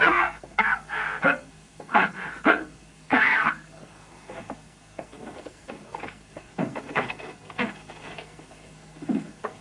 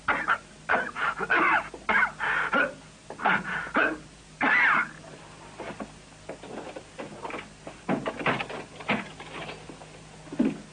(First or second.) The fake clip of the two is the first